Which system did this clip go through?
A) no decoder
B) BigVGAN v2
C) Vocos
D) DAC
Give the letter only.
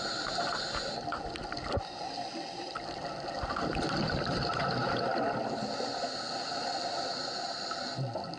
A